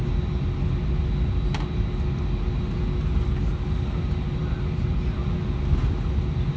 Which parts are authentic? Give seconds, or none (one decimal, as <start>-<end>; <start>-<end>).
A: 0.0-6.6

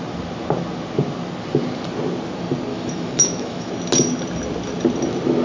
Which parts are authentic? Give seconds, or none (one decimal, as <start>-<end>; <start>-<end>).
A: 0.0-2.7; 3.7-5.4